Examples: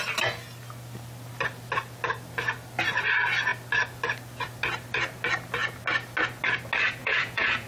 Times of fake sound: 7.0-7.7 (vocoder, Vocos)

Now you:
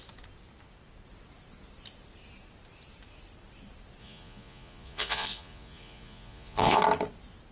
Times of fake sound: 4.0-6.8 (vocoder, Vocos)

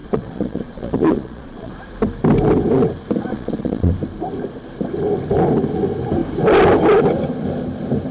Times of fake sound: 0.0-1.7 (vocoder, Vocos); 3.3-3.9

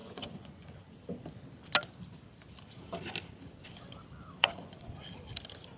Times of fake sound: 0.0-0.7 (vocoder, Vocos); 4.4-4.9

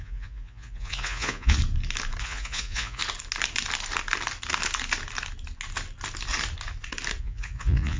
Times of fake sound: 0.0-1.6 (vocoder, Vocos); 2.2-3.0; 7.2-8.0

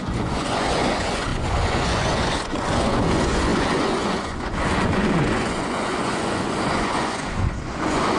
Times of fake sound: 0.0-8.2 (vocoder, Vocos)

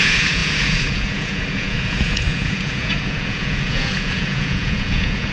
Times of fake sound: 0.0-5.3 (vocoder, Vocos)